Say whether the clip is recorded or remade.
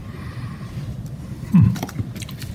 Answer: remade